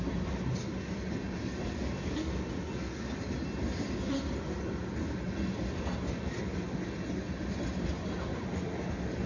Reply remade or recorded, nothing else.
recorded